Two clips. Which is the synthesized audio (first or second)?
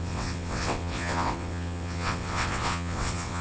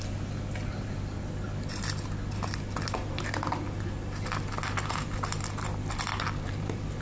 first